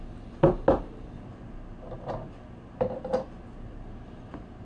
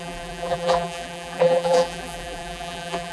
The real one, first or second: first